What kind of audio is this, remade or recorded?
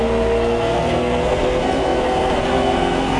remade